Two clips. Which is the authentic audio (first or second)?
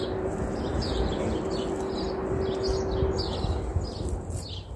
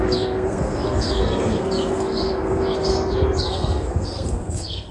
first